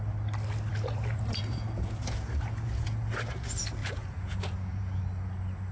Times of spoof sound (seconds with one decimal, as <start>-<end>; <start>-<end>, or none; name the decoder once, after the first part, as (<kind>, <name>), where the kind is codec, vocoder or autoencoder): 0.7-3.1 (vocoder, Vocos); 3.8-5.0